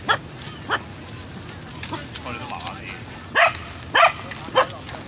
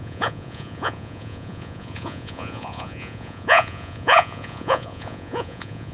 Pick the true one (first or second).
first